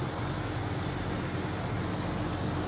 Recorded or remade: recorded